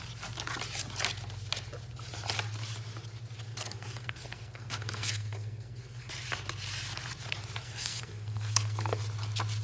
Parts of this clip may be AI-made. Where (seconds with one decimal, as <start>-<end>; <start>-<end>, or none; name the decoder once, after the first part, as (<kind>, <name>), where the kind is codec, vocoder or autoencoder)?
3.5-6.1 (codec, SNAC); 7.6-9.0